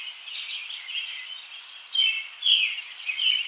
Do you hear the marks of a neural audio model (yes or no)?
no